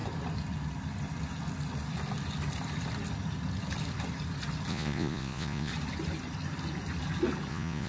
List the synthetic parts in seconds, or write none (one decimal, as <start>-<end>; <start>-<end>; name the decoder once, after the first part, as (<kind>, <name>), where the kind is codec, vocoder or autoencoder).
4.7-5.7 (vocoder, Vocos); 7.5-7.9